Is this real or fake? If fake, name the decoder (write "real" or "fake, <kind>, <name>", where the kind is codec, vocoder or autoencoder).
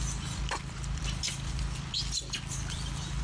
fake, vocoder, BigVGAN v2